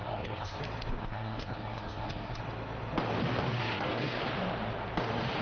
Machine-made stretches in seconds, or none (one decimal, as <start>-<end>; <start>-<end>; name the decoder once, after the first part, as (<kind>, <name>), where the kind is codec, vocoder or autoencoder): 0.0-0.6 (codec, SNAC); 1.0-2.4; 3.6-4.2